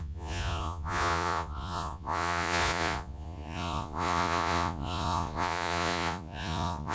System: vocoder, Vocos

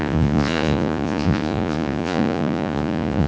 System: vocoder, Vocos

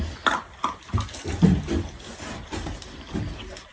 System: none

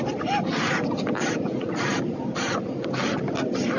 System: none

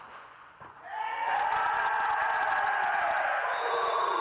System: vocoder, Vocos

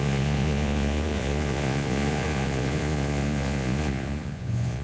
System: vocoder, Vocos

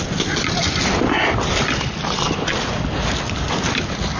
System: none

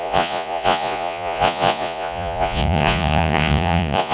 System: vocoder, Vocos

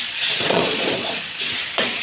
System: vocoder, Vocos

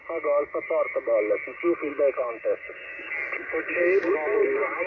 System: none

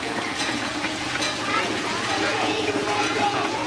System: vocoder, Vocos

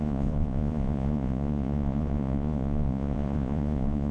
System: vocoder, Vocos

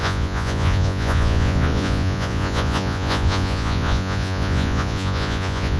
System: vocoder, Vocos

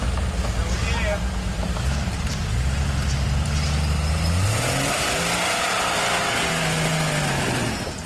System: none